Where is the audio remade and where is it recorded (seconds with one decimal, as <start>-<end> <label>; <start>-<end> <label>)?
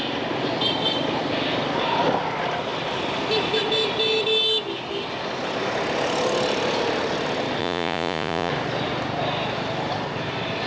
0.0-7.6 recorded; 7.6-8.5 remade; 8.5-10.7 recorded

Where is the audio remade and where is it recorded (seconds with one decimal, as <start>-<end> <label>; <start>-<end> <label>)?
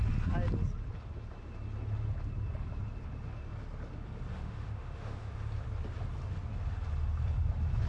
0.0-4.3 recorded; 4.3-5.3 remade; 5.3-7.9 recorded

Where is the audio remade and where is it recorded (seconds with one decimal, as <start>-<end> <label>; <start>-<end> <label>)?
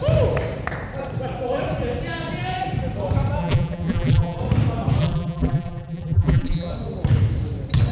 0.0-3.4 recorded; 3.4-4.4 remade; 4.4-5.0 recorded; 5.0-6.7 remade; 6.7-7.9 recorded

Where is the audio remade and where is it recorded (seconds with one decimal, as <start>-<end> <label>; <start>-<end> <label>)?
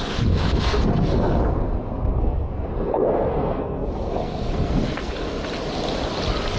0.0-5.4 remade; 5.4-6.6 recorded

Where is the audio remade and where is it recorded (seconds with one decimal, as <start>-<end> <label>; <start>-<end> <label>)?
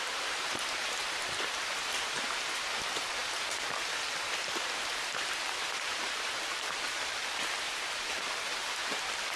0.0-9.4 remade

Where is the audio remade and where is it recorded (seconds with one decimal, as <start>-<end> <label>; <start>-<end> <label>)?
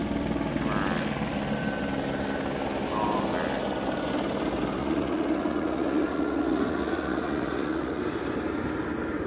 0.0-4.8 recorded; 4.8-8.0 remade; 8.0-9.3 recorded